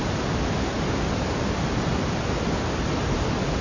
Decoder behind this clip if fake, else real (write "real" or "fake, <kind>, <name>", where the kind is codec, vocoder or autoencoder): real